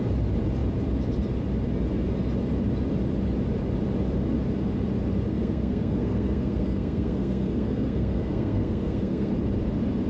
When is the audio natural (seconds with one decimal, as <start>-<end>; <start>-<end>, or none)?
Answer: 0.0-5.3; 9.3-10.1